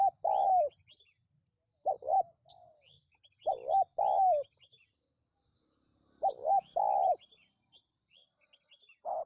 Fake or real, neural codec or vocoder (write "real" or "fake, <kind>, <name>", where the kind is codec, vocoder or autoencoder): real